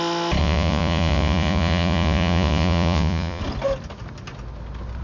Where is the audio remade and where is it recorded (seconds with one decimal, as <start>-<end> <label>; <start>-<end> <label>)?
0.0-0.4 recorded; 0.4-3.4 remade; 3.4-5.0 recorded